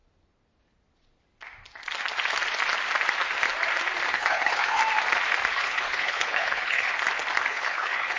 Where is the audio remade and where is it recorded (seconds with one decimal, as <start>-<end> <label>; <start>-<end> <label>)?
0.0-4.1 recorded; 4.1-4.8 remade; 4.8-5.5 recorded; 5.5-6.9 remade; 6.9-7.5 recorded; 7.5-8.2 remade